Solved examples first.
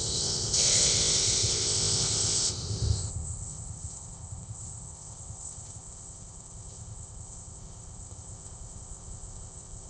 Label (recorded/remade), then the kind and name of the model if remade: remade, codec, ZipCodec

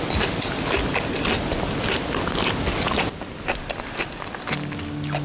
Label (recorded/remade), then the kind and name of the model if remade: recorded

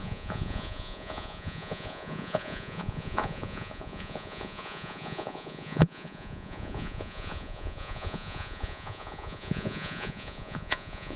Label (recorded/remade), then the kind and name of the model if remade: remade, vocoder, Vocos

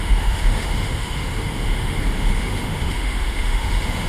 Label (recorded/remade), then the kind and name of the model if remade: remade, autoencoder, DAC-VAE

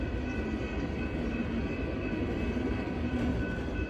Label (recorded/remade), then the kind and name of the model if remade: recorded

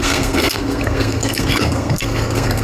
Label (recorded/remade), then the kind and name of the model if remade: remade, codec, SNAC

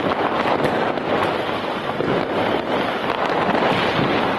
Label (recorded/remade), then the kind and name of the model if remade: recorded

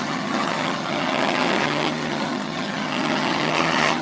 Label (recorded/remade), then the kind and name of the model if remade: remade, vocoder, HiFi-GAN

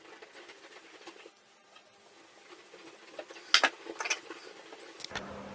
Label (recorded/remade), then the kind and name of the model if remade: recorded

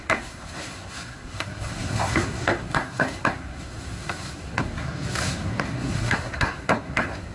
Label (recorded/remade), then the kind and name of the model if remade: remade, codec, SNAC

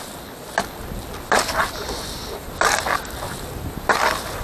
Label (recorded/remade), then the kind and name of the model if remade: recorded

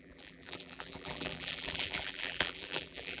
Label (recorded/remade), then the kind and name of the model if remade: remade, vocoder, BigVGAN v2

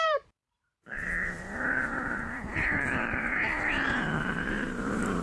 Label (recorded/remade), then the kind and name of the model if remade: remade, vocoder, BigVGAN v2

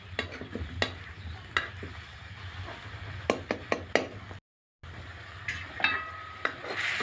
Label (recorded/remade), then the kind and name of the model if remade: recorded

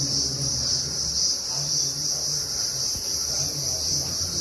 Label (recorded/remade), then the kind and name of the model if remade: recorded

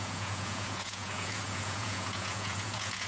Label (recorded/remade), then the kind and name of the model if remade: remade, vocoder, Vocos